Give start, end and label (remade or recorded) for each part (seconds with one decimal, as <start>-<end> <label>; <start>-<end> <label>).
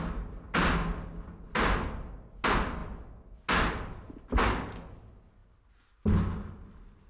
0.0-7.1 recorded